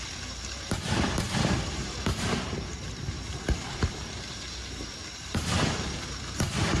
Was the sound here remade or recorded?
remade